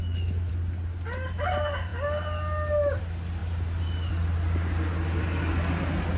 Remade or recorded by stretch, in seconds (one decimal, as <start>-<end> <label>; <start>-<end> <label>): 0.0-0.5 remade; 0.5-6.2 recorded